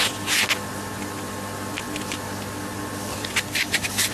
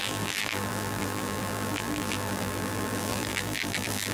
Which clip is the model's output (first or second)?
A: second